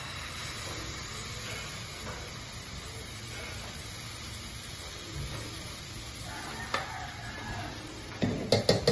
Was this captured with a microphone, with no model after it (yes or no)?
yes